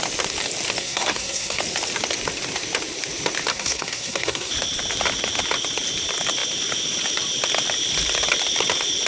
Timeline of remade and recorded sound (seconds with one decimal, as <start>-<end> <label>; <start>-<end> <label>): 0.0-0.8 recorded; 0.8-1.6 remade; 1.6-3.5 recorded; 3.5-4.5 remade; 4.5-9.1 recorded